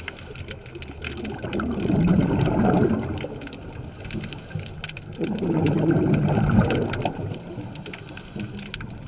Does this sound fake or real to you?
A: real